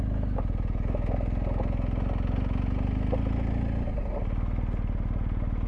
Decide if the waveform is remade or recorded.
recorded